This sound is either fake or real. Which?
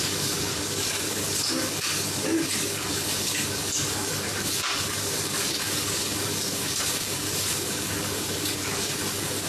fake